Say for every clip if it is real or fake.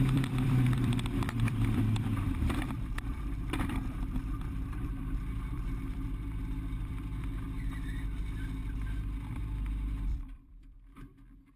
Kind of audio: fake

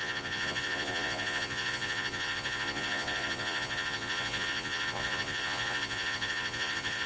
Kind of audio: fake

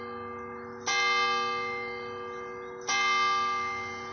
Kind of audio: real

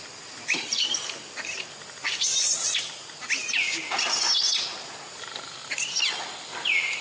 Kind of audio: real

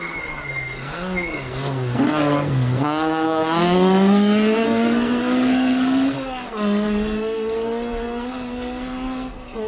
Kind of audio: fake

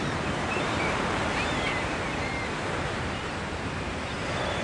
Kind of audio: fake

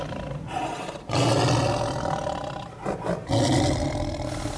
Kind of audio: real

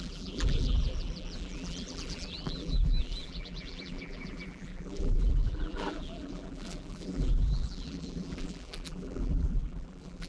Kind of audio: fake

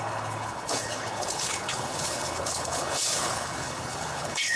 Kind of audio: fake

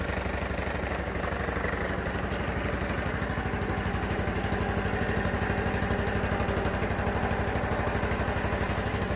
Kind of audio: real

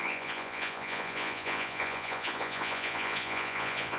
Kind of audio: fake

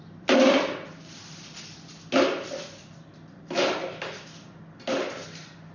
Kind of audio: real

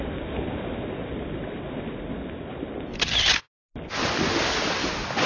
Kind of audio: real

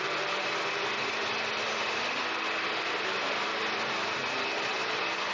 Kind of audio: real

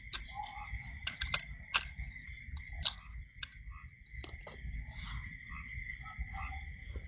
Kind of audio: real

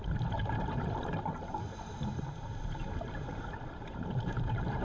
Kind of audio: fake